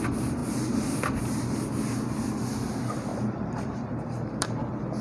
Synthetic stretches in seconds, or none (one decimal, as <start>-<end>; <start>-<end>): 3.1-4.6